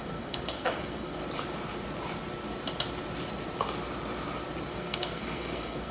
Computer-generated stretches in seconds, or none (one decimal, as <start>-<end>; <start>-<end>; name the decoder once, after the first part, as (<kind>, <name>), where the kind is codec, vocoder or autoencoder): 0.0-1.2 (codec, SNAC); 4.7-5.9